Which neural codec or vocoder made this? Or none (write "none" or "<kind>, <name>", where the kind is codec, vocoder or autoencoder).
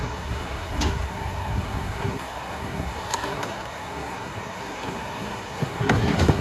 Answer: codec, SNAC